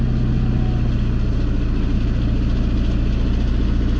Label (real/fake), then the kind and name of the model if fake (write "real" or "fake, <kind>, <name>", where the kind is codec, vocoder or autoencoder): real